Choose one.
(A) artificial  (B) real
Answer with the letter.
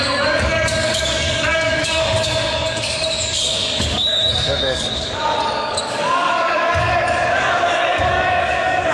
A